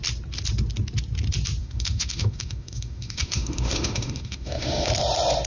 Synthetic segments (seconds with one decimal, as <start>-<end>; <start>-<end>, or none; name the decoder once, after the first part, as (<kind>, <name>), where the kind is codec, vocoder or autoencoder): 1.6-4.9 (autoencoder, DAC-VAE)